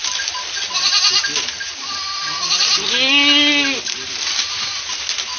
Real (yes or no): yes